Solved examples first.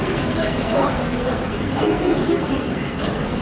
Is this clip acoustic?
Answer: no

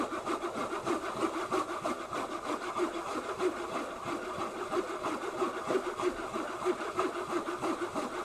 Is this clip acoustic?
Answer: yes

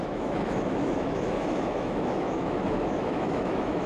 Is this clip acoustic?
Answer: no